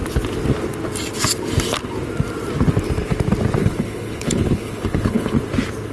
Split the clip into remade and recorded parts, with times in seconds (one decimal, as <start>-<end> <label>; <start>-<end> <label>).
0.0-3.6 recorded; 3.6-5.4 remade; 5.4-5.9 recorded